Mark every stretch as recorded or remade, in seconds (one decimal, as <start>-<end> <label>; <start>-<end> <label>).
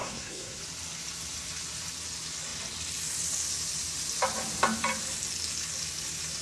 0.0-0.6 remade; 0.6-6.4 recorded